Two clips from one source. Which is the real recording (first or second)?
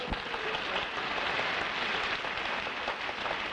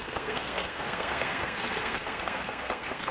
first